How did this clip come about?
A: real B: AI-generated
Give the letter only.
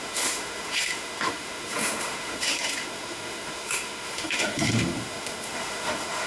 B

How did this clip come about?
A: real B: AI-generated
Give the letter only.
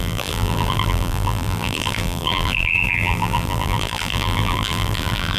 B